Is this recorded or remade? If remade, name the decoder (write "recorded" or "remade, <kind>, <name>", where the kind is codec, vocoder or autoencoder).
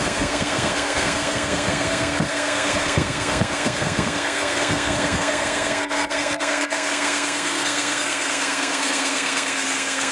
remade, codec, SNAC